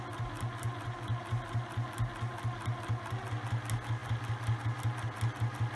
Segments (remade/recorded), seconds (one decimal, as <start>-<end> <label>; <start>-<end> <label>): 0.0-5.8 recorded